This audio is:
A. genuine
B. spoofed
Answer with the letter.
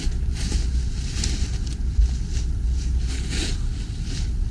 A